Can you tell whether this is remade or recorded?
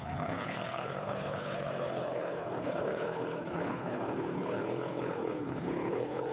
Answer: remade